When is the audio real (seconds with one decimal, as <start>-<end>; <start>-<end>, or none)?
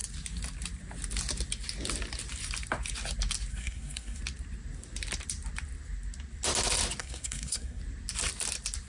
0.0-3.5; 4.2-7.0; 7.8-8.9